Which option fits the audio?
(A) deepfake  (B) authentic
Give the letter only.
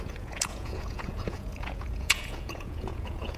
A